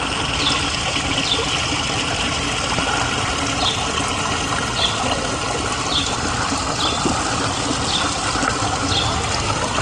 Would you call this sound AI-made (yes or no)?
no